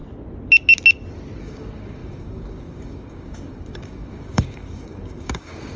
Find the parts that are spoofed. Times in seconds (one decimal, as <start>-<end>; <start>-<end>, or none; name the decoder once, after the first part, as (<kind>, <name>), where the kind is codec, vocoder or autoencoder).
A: 1.4-5.8 (codec, DAC)